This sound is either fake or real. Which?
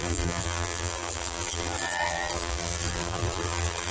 fake